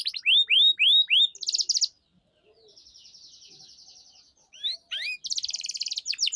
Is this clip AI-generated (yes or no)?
no